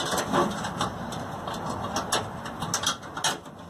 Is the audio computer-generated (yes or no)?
no